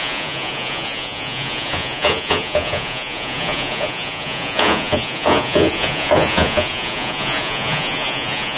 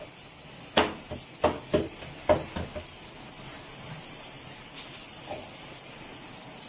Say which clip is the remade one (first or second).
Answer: first